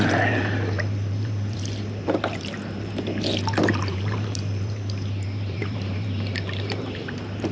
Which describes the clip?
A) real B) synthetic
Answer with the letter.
B